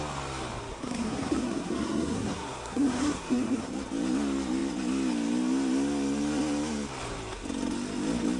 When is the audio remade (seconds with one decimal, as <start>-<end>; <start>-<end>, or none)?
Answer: 0.7-3.7